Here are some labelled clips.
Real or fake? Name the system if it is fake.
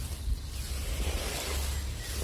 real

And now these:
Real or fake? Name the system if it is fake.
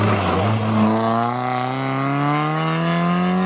real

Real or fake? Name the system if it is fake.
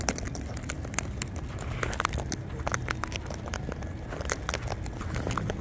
real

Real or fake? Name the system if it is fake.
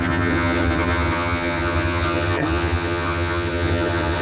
fake, vocoder, HiFi-GAN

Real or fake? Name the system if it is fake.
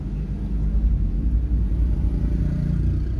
real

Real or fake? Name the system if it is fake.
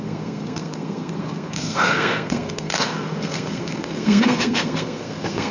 fake, codec, SNAC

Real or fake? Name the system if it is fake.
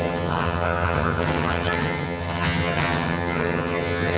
fake, vocoder, HiFi-GAN